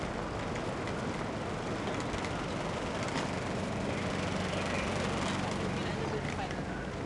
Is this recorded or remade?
recorded